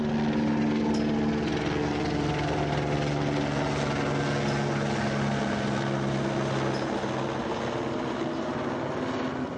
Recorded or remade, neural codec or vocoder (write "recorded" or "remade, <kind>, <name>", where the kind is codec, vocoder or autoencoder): recorded